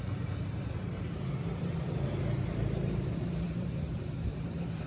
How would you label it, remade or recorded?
remade